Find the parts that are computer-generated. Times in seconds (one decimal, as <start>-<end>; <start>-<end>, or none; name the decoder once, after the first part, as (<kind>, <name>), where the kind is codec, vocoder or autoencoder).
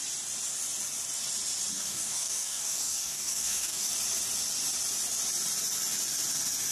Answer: 1.7-3.9 (codec, DAC)